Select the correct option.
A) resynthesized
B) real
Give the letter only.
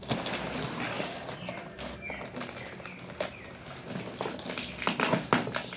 B